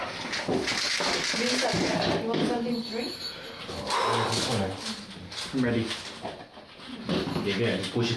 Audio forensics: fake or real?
real